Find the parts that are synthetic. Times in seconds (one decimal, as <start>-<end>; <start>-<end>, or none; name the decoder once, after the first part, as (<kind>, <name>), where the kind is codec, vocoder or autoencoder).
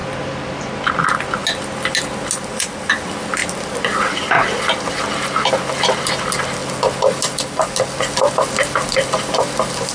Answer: 0.0-0.7 (vocoder, BigVGAN v2)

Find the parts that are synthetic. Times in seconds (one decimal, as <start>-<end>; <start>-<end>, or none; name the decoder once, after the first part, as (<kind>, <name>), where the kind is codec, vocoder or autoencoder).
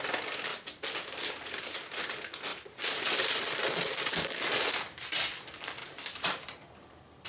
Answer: 0.5-2.1 (vocoder, BigVGAN v2); 2.5-4.0; 5.8-7.3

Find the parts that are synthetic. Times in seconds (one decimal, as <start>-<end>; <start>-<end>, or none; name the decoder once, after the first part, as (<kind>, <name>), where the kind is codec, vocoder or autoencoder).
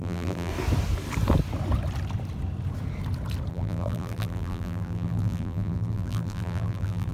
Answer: 0.0-0.5 (vocoder, BigVGAN v2); 3.5-7.1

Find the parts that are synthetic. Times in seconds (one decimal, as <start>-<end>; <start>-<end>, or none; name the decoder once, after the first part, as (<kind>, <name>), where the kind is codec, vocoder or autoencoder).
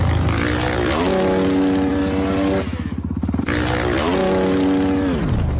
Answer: none